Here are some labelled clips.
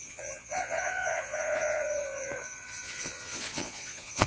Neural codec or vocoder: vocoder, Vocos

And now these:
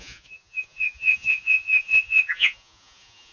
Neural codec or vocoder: vocoder, Vocos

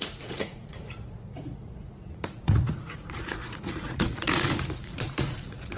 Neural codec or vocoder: vocoder, Vocos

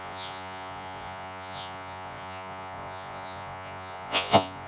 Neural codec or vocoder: vocoder, Vocos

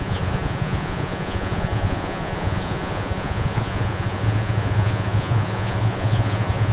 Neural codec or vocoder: vocoder, Vocos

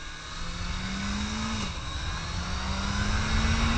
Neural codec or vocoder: none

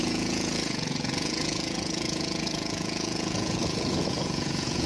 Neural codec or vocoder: vocoder, Vocos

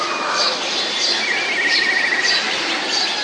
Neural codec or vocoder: none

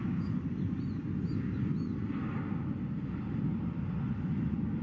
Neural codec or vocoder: none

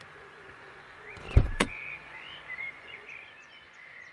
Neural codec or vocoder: vocoder, Vocos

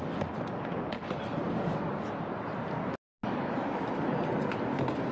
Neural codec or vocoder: none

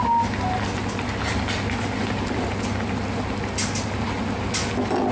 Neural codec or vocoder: none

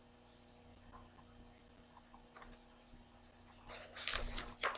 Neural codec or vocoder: none